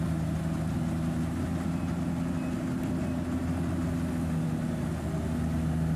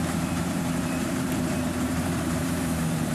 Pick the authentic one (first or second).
first